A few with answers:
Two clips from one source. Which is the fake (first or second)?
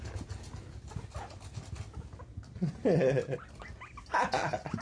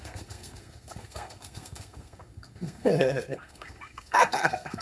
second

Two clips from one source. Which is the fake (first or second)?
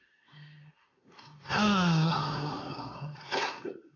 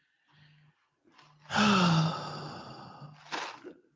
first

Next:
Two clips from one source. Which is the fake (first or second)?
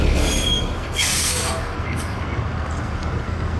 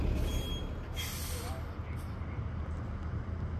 first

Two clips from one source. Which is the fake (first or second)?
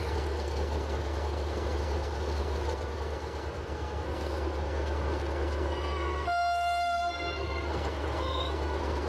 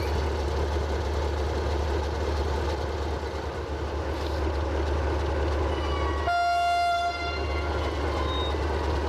first